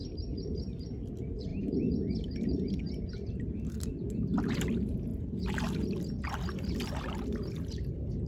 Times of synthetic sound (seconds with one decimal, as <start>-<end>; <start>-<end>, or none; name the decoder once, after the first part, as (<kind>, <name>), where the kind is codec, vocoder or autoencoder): 0.0-5.1 (vocoder, BigVGAN v2); 7.7-8.3

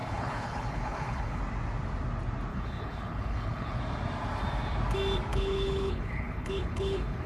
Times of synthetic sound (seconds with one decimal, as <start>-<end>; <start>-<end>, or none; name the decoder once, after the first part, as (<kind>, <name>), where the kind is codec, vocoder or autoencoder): 0.0-1.4 (codec, HILCodec); 2.5-3.8; 5.3-7.3

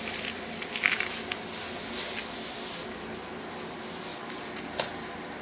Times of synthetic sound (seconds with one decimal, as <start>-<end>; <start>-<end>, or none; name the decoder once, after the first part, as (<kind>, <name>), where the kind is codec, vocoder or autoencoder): none

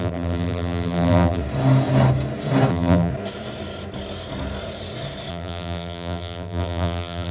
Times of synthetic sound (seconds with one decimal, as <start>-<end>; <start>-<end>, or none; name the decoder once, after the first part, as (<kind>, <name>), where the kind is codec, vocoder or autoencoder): 0.0-1.4 (vocoder, BigVGAN v2); 2.7-3.1; 5.3-7.3

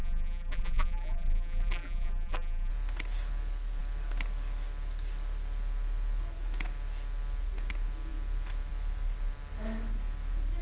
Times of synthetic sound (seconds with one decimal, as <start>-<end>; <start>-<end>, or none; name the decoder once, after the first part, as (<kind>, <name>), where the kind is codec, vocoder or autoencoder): 0.0-2.7 (vocoder, BigVGAN v2)

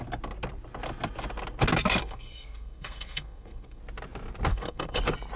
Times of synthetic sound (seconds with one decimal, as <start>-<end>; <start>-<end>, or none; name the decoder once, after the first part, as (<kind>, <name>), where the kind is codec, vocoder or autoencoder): 2.0-3.8 (codec, SNAC); 4.5-5.0